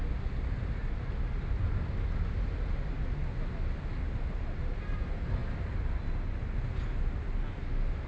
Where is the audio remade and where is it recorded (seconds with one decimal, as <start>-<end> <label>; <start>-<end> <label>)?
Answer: 0.0-8.1 recorded